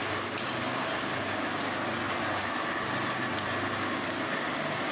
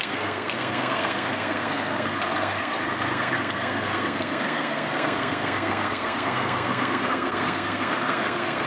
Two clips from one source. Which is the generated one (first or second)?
second